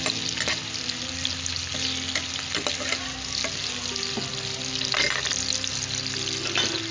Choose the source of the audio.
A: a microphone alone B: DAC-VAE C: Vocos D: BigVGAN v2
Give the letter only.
A